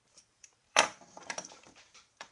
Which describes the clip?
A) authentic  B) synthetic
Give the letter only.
B